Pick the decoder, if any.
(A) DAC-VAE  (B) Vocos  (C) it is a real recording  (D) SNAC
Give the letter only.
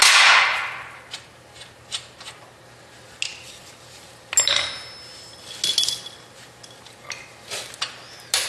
C